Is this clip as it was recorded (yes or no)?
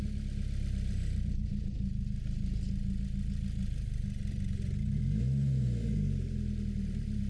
yes